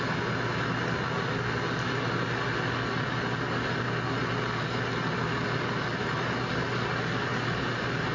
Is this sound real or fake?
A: real